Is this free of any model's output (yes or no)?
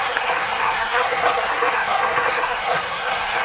no